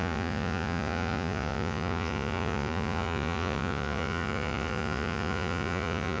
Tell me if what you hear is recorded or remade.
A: remade